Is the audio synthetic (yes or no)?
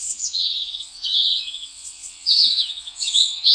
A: yes